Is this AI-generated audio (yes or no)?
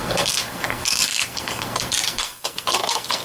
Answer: yes